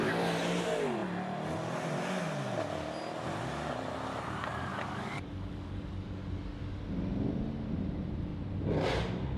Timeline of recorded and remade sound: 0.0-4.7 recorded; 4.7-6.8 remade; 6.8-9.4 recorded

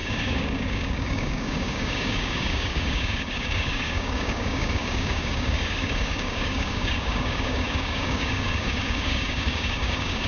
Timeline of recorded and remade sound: 0.0-10.3 remade

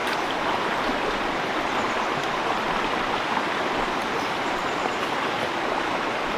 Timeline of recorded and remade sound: 0.0-6.4 recorded

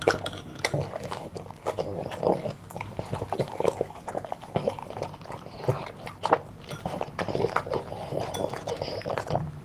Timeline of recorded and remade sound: 0.0-4.8 remade; 4.8-9.6 recorded

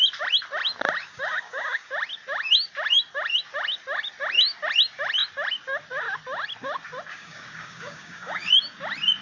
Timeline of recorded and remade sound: 0.0-1.0 recorded; 1.0-1.9 remade; 1.9-7.1 recorded; 7.1-8.5 remade; 8.5-9.2 recorded